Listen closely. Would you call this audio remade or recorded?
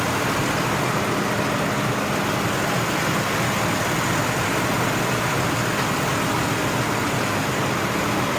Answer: recorded